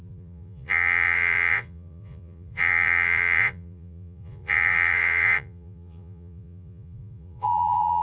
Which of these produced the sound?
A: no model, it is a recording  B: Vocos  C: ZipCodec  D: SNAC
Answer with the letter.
B